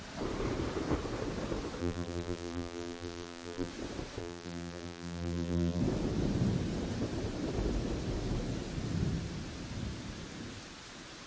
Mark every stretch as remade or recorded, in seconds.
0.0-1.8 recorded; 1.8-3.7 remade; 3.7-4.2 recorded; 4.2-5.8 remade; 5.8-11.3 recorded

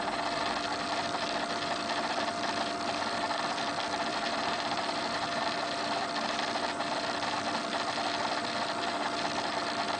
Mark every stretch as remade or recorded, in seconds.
0.0-4.1 recorded; 4.1-6.4 remade; 6.4-10.0 recorded

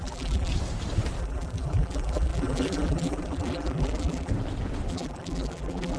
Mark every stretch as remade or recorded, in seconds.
0.0-0.5 remade; 0.5-1.2 recorded; 1.2-4.3 remade; 4.3-4.9 recorded; 4.9-6.0 remade

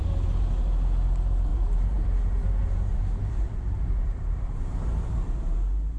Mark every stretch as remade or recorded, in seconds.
0.0-1.5 recorded; 1.5-5.1 remade; 5.1-6.0 recorded

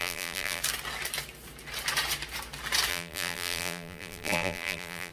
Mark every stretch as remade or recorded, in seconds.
0.0-0.6 remade; 0.6-2.9 recorded; 2.9-5.1 remade

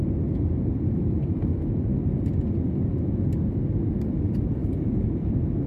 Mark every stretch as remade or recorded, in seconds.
0.0-4.6 recorded; 4.6-5.3 remade; 5.3-5.7 recorded